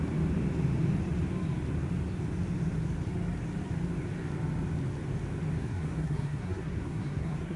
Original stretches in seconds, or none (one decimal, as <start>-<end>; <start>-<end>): 0.0-5.6